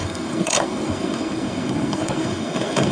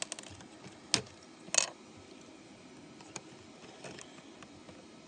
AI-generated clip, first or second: first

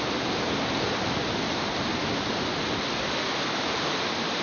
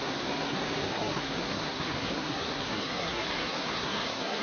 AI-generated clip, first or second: second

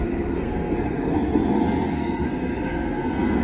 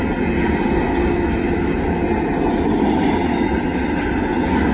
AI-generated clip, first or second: first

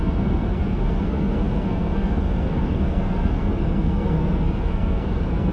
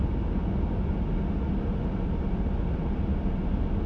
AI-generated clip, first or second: first